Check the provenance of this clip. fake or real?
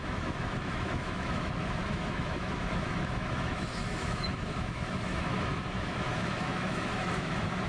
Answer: fake